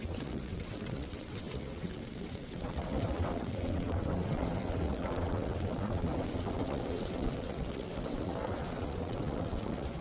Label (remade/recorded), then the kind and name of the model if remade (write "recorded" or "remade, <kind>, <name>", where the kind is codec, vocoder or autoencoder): remade, vocoder, WaveNeXt